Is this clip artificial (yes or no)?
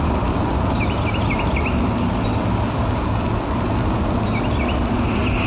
no